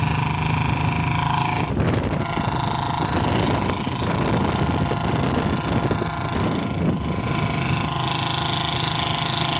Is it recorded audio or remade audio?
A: recorded